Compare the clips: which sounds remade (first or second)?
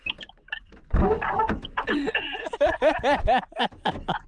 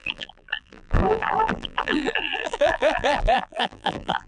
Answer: second